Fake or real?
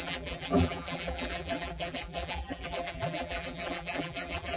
fake